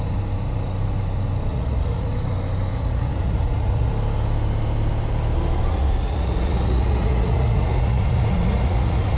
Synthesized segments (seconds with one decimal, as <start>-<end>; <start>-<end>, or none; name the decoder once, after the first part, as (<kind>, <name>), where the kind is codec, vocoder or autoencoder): 1.5-2.1 (vocoder, Vocos); 2.7-3.9; 5.7-9.2